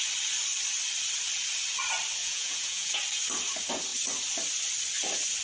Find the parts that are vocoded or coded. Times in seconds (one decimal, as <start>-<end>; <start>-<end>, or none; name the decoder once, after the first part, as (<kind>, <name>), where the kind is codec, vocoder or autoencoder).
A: 2.2-3.0 (vocoder, Vocos)

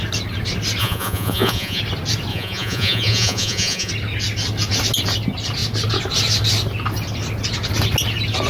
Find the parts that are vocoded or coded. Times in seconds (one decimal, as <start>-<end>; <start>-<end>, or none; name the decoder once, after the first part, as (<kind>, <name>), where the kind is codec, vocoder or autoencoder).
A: 0.8-1.8 (vocoder, Vocos); 2.3-3.9

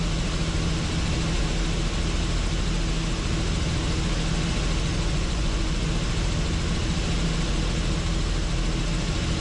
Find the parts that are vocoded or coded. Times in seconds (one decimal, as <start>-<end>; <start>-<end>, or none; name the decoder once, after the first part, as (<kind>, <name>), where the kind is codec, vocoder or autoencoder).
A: 4.9-5.9 (vocoder, Vocos)

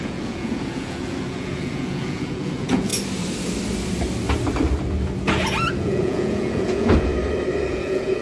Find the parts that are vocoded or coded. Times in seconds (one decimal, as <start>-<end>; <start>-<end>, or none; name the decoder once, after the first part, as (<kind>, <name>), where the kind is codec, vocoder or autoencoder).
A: 0.0-2.9 (vocoder, Vocos); 5.8-7.1; 7.7-8.2

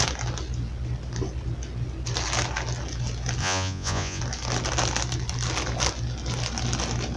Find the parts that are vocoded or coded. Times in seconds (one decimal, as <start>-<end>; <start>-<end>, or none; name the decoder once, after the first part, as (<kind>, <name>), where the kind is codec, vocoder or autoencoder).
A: 3.4-4.2 (vocoder, Vocos)

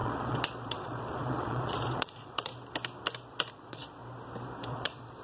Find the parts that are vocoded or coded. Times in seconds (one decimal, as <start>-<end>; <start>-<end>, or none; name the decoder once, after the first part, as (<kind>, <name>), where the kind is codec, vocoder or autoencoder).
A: 0.0-2.5 (vocoder, Vocos); 3.5-4.0; 4.7-5.2

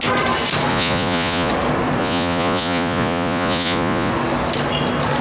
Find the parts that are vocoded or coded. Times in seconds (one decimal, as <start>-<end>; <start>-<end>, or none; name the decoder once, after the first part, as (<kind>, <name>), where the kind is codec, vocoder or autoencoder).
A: 0.7-1.5 (vocoder, Vocos); 2.0-4.1